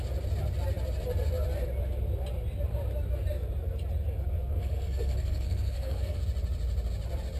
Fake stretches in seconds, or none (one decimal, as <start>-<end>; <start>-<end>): 4.5-6.2